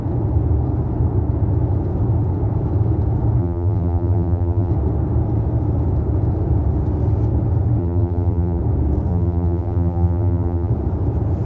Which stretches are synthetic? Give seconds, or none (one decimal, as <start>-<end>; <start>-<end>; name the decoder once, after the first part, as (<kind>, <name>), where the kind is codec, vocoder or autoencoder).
3.4-4.7 (vocoder, BigVGAN v2); 7.8-8.6; 9.1-10.7